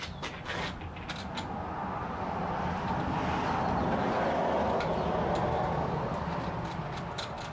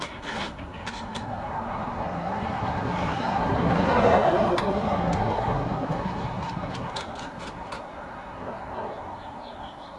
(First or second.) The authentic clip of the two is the first